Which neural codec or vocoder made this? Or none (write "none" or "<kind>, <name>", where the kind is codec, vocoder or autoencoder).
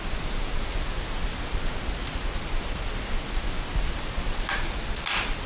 none